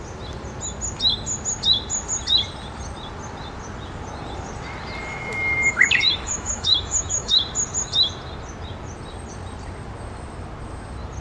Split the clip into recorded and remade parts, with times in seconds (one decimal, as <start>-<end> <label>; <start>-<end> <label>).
0.0-5.1 recorded; 5.1-7.4 remade; 7.4-11.2 recorded